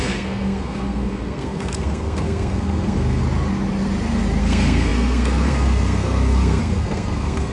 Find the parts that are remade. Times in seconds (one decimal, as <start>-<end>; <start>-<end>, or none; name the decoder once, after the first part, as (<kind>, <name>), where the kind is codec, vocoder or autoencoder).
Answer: 0.0-3.2 (codec, SNAC); 4.4-7.5